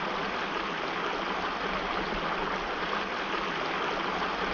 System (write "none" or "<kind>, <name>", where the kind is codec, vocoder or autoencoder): none